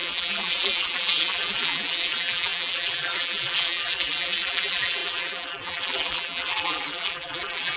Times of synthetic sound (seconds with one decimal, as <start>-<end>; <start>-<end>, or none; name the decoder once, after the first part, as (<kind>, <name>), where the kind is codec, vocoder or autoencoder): 0.0-7.8 (vocoder, BigVGAN v2)